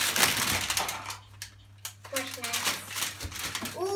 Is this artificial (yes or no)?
no